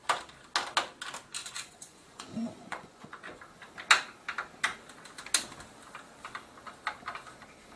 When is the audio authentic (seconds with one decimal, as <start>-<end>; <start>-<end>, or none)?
0.0-1.4; 3.4-7.8